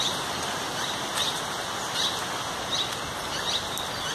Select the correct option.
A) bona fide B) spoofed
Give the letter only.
A